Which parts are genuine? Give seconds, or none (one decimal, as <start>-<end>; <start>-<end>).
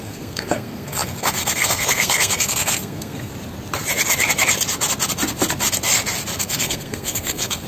3.3-6.4